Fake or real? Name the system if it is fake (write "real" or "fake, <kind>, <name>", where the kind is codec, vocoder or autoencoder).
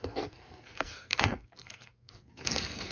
fake, codec, SNAC